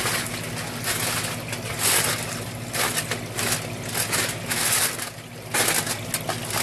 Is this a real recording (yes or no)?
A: yes